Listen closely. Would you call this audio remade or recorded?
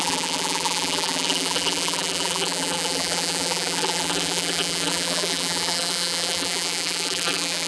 remade